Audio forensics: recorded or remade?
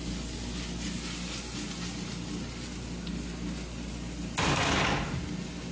recorded